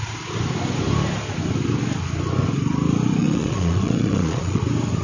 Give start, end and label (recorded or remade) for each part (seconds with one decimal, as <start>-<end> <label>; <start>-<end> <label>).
0.0-3.2 recorded; 3.2-4.6 remade; 4.6-5.0 recorded